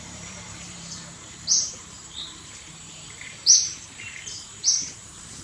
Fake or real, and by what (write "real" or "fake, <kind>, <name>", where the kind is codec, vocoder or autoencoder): fake, vocoder, BigVGAN v2